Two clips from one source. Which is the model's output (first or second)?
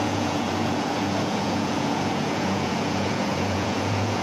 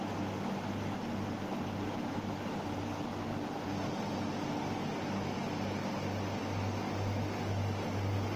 first